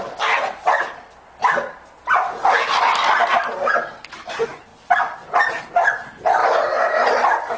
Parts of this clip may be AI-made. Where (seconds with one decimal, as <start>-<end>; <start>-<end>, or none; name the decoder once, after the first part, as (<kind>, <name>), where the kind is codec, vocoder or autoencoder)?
1.4-2.4 (vocoder, BigVGAN v2); 4.7-5.6; 6.4-7.6